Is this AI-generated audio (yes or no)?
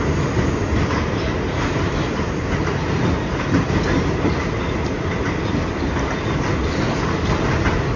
no